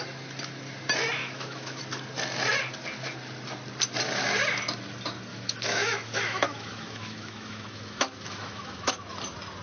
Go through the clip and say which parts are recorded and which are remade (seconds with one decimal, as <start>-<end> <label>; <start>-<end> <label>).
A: 0.0-1.2 recorded; 1.2-1.8 remade; 1.8-5.3 recorded; 5.3-8.9 remade; 8.9-9.6 recorded